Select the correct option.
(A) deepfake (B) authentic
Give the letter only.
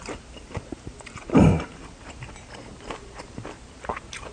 A